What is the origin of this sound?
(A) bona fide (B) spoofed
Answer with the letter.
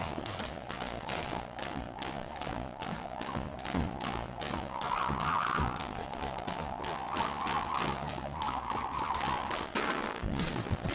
B